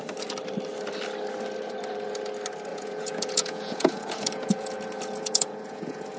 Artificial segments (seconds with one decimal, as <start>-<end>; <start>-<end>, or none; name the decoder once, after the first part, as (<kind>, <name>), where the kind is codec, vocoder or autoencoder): 2.7-6.2 (vocoder, Vocos)